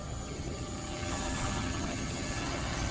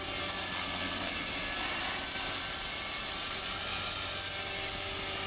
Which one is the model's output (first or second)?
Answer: first